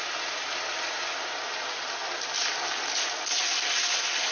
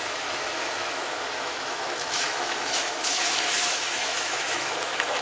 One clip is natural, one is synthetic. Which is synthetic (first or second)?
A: second